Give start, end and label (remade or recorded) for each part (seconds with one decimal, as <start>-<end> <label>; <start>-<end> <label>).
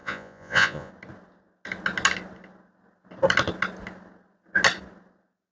0.0-0.9 remade; 0.9-5.5 recorded